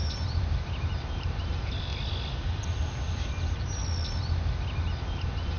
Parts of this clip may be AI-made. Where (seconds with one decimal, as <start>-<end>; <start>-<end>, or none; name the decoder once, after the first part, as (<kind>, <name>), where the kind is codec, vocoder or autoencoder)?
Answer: 0.0-1.9 (vocoder, BigVGAN v2); 2.5-3.8